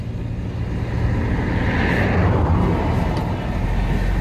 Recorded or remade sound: recorded